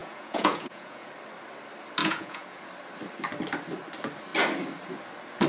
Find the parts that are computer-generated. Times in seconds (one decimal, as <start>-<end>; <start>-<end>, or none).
0.0-1.1; 2.0-2.6